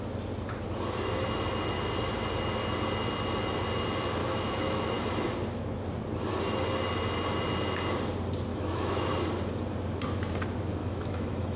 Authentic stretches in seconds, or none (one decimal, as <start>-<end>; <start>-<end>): 0.0-4.2; 4.9-8.5; 9.1-10.8

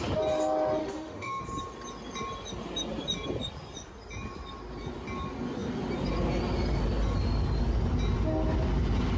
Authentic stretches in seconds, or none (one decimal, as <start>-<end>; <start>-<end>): 0.0-0.8; 1.4-9.2

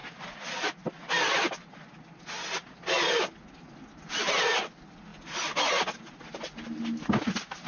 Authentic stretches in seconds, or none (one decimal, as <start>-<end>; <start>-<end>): 0.0-7.7

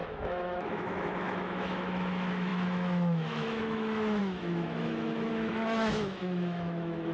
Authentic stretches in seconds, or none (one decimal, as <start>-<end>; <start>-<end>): none

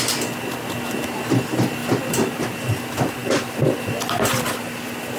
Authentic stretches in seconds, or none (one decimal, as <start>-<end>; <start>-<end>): 0.0-5.2